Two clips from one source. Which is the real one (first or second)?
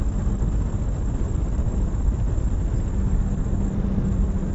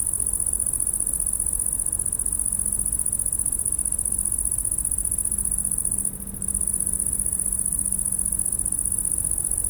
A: second